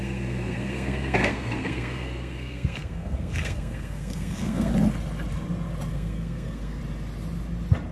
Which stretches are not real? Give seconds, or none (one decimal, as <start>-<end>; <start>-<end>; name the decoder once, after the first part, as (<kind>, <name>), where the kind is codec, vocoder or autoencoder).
0.0-4.7 (codec, SNAC); 5.9-6.8